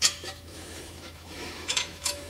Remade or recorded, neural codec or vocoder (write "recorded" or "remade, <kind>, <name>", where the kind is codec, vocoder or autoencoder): remade, autoencoder, DAC-VAE